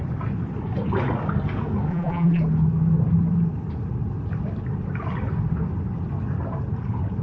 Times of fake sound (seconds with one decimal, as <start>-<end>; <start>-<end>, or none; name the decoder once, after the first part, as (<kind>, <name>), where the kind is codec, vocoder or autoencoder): 1.9-2.4 (vocoder, BigVGAN v2)